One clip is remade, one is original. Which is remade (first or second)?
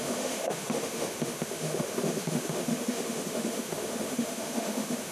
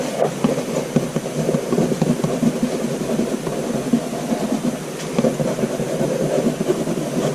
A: first